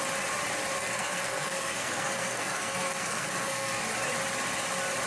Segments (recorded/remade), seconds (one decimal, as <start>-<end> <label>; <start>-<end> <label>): 0.0-0.8 recorded; 0.8-3.8 remade; 3.8-5.1 recorded